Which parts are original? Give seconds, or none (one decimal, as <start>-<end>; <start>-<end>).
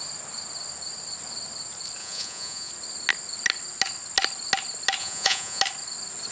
0.0-2.0; 2.7-5.0; 5.6-6.3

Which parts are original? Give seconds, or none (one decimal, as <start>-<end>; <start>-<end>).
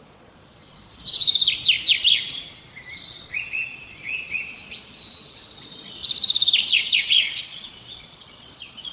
1.3-3.1; 6.0-6.7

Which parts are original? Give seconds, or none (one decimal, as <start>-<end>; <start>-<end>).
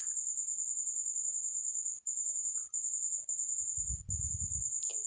0.0-5.1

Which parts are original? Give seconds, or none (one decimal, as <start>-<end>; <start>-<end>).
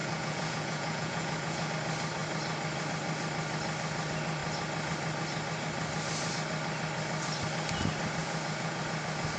1.7-8.2; 8.8-9.4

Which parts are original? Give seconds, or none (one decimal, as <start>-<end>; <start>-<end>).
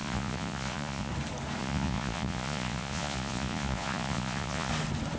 1.1-1.6; 4.7-5.2